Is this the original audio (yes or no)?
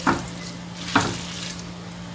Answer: yes